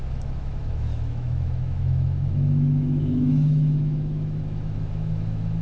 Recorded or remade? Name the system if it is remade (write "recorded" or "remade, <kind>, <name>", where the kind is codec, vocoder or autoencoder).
remade, autoencoder, DAC-VAE